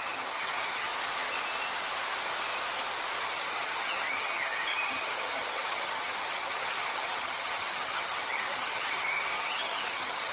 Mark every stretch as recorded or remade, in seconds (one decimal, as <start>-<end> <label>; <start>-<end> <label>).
0.0-0.9 remade; 0.9-3.2 recorded; 3.2-10.3 remade